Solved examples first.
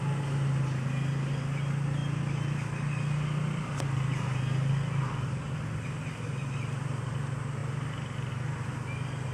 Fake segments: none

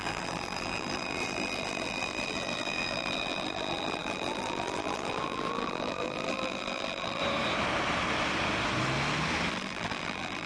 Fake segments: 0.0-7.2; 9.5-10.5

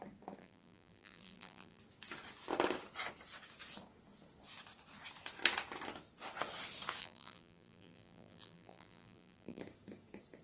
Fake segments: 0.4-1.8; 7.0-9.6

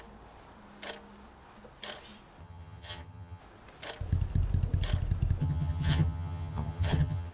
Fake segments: 2.4-3.4; 5.4-7.3

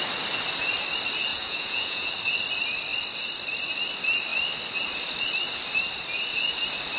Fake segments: 1.3-2.1